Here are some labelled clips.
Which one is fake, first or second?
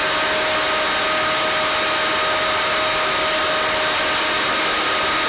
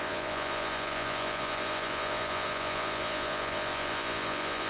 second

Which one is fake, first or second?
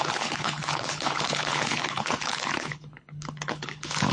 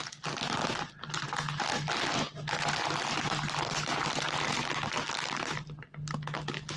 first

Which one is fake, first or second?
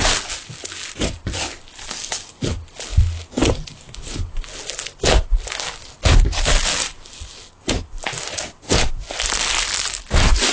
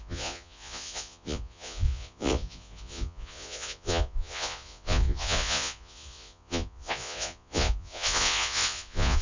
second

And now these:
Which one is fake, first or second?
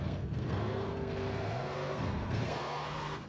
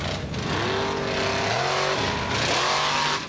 first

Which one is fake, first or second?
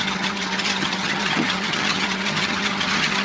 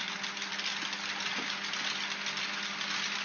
first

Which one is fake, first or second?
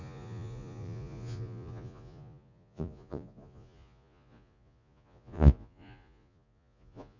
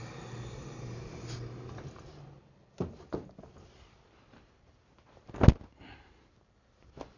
first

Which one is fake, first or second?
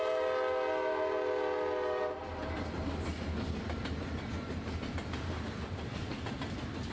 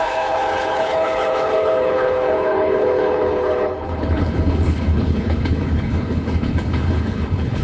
second